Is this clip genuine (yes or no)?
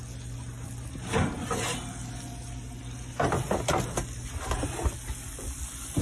yes